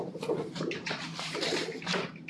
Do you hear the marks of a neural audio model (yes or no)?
yes